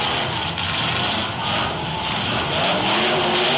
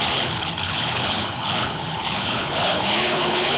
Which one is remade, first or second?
second